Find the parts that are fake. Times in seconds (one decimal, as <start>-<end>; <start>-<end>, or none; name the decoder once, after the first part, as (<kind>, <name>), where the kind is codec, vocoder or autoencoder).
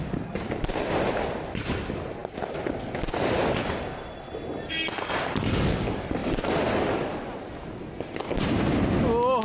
none